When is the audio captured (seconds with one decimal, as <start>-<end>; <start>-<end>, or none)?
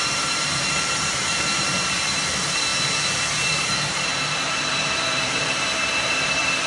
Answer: 2.7-3.5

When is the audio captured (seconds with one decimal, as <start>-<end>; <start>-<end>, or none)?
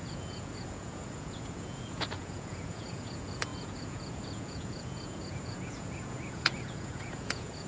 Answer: none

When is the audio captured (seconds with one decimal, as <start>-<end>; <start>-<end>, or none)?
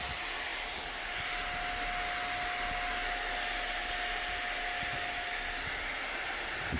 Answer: 0.0-6.8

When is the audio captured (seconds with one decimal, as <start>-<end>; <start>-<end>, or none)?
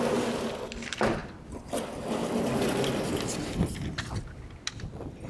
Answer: 0.0-5.3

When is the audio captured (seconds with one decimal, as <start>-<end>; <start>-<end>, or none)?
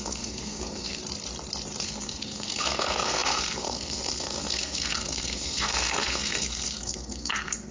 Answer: 1.0-1.8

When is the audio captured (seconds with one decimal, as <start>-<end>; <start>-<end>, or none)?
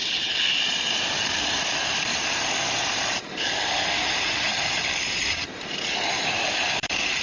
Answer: none